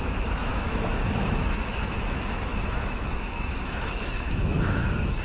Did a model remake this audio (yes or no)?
yes